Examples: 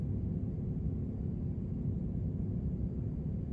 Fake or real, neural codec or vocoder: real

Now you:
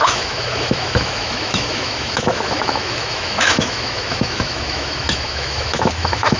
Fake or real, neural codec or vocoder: fake, autoencoder, DAC-VAE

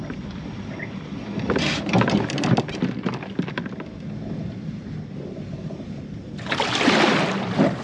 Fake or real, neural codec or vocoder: real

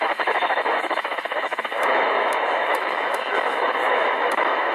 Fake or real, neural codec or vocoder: fake, autoencoder, DAC-VAE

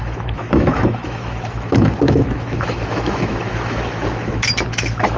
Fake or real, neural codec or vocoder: fake, autoencoder, DAC-VAE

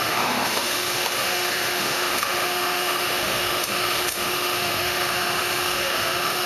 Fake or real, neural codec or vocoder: fake, autoencoder, DAC-VAE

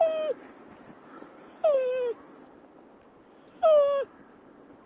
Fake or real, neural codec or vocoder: real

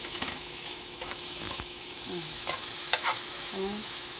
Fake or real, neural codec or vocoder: fake, autoencoder, DAC-VAE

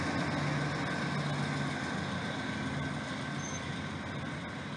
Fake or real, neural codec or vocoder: real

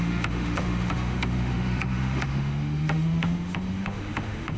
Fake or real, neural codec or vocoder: fake, autoencoder, DAC-VAE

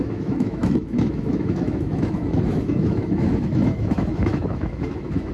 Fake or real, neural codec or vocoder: fake, autoencoder, DAC-VAE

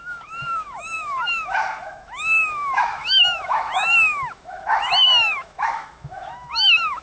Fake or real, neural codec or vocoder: fake, autoencoder, DAC-VAE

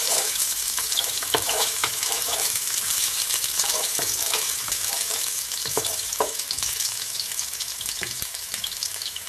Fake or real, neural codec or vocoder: fake, autoencoder, DAC-VAE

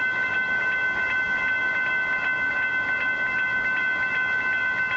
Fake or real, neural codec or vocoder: real